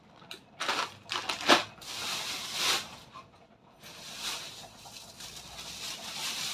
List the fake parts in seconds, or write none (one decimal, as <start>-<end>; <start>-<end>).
none